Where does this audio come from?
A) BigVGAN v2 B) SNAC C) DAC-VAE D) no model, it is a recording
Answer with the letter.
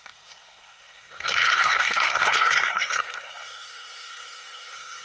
B